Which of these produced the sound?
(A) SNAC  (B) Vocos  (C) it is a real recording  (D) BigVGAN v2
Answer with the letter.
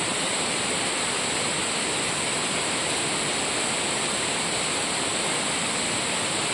D